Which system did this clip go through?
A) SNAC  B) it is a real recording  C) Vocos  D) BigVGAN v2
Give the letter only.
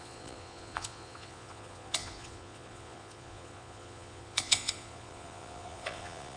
C